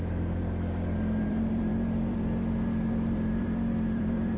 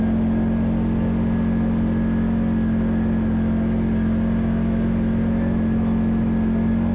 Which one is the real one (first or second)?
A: second